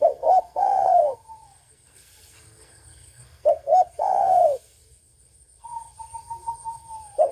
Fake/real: fake